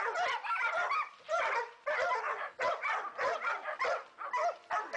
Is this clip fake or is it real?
real